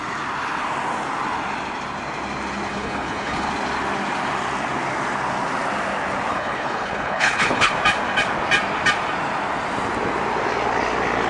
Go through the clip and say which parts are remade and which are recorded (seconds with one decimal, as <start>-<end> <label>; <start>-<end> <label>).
0.0-2.7 recorded; 2.7-3.5 remade; 3.5-6.3 recorded; 6.3-7.7 remade; 7.7-11.3 recorded